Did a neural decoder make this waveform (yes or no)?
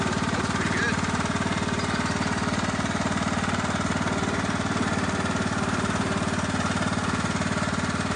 no